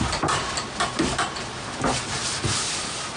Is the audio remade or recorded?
remade